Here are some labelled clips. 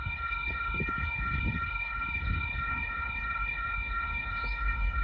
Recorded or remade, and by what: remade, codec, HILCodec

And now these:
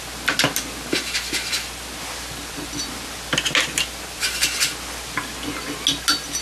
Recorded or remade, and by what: recorded